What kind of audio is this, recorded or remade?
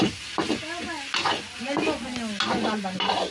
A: recorded